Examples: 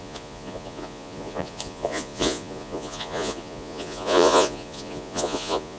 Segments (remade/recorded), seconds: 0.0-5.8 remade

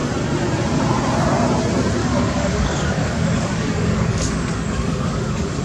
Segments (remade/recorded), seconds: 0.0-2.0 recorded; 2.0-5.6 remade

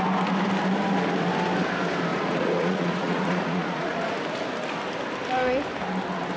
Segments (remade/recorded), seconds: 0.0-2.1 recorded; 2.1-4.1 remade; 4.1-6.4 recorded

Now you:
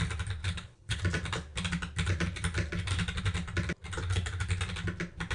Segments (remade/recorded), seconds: 0.0-0.4 recorded; 0.4-1.0 remade; 1.0-5.3 recorded

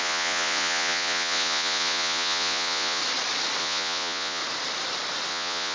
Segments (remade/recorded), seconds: 0.0-3.0 remade; 3.0-3.6 recorded; 3.6-4.4 remade; 4.4-5.3 recorded; 5.3-5.7 remade

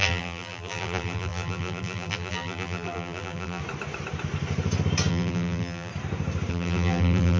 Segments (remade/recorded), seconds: 0.0-3.6 remade; 3.6-5.1 recorded; 5.1-5.9 remade; 5.9-6.5 recorded; 6.5-7.4 remade